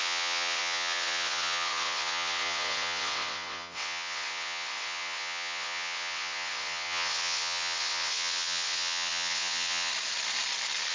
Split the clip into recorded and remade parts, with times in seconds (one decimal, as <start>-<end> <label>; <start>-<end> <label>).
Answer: 0.0-9.9 remade; 9.9-10.9 recorded